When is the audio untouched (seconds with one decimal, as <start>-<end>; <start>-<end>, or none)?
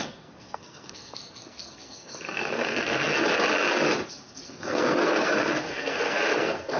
3.2-4.1